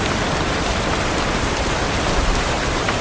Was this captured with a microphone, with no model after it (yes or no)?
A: yes